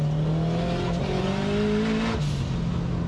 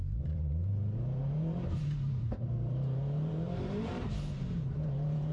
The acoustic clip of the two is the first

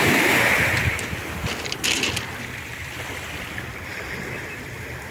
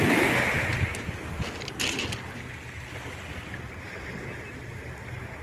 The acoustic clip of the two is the second